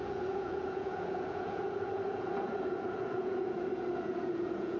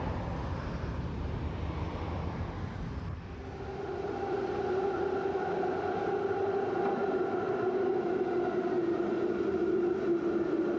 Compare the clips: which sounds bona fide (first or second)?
second